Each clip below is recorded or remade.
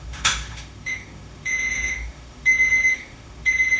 remade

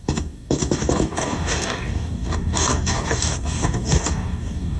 remade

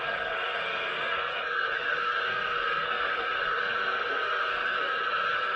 remade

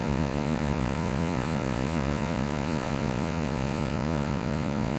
remade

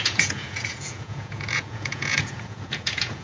remade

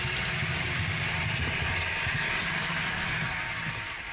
recorded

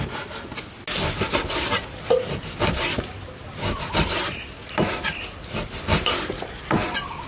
recorded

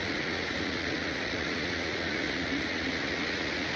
remade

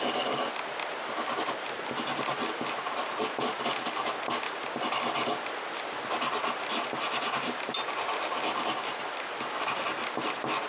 recorded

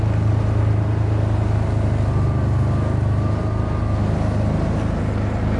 recorded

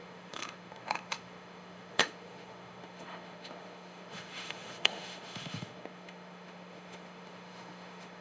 remade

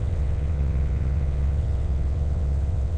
remade